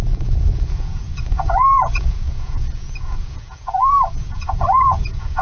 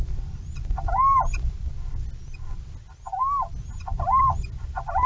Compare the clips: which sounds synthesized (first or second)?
first